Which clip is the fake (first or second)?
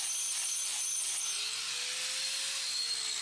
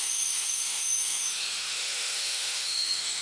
second